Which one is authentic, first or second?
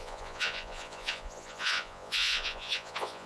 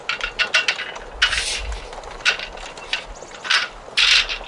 second